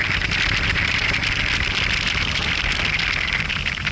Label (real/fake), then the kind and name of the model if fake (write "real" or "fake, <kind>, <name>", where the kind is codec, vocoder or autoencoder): fake, vocoder, BigVGAN v2